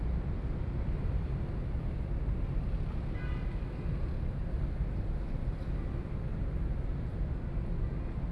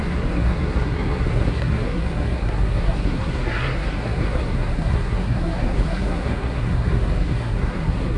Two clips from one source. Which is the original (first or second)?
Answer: first